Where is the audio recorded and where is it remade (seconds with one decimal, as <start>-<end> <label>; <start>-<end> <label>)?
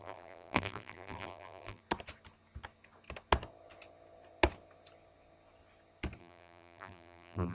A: 0.0-1.8 remade; 1.8-6.2 recorded; 6.2-7.5 remade